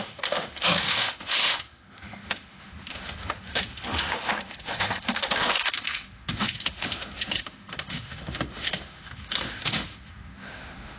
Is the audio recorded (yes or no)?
no